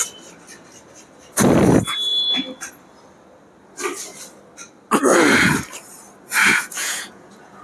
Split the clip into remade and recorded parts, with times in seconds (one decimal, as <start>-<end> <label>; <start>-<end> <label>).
0.0-6.4 recorded; 6.4-7.6 remade